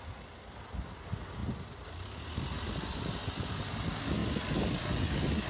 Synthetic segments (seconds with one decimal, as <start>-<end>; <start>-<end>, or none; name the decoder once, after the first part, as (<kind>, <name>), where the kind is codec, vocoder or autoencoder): none